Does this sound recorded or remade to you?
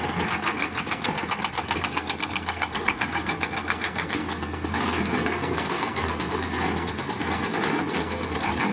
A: remade